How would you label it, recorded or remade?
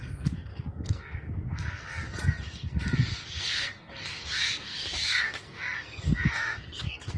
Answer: remade